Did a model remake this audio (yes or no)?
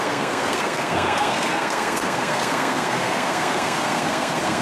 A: yes